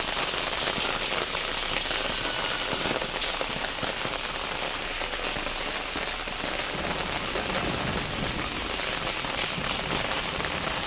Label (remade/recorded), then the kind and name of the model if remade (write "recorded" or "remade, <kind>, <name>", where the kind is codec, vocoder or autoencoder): recorded